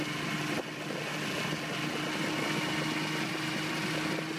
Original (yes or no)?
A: yes